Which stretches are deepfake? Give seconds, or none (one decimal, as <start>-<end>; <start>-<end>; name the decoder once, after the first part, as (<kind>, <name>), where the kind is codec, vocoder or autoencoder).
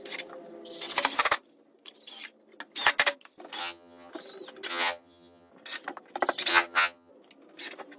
3.6-4.1 (vocoder, HiFi-GAN); 4.7-5.5; 6.5-7.1